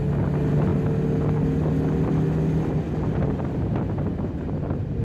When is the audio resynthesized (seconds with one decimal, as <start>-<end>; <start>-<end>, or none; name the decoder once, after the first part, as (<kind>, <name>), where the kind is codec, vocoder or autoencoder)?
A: none